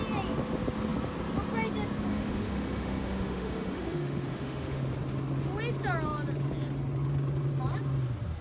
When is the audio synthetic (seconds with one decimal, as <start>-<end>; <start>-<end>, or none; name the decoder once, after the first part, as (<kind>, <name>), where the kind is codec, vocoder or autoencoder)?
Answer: 2.1-4.8 (autoencoder, DAC-VAE)